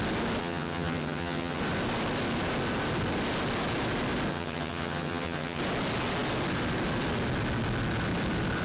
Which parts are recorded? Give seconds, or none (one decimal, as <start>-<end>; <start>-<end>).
0.0-0.4; 1.6-4.3; 5.6-8.6